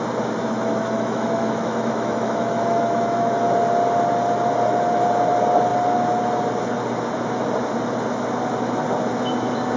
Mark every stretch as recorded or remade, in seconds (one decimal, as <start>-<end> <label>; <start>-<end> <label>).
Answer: 0.0-0.4 recorded; 0.4-3.5 remade; 3.5-9.8 recorded